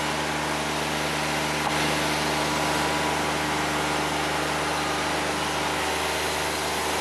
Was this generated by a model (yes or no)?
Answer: no